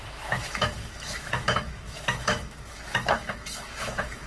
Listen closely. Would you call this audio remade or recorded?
remade